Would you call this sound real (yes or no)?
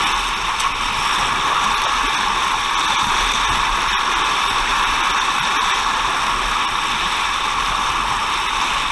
yes